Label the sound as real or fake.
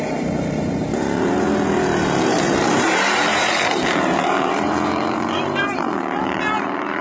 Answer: fake